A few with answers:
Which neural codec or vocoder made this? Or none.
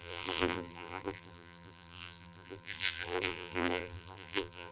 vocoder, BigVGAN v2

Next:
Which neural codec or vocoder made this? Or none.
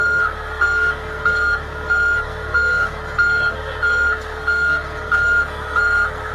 codec, SNAC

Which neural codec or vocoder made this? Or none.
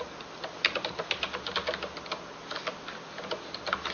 none